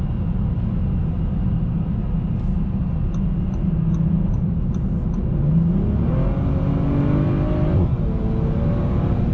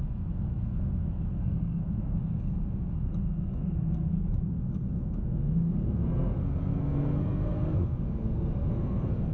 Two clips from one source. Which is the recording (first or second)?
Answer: first